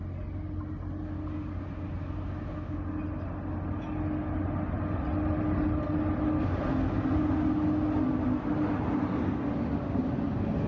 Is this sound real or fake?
real